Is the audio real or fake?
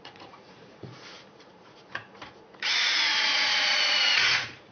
fake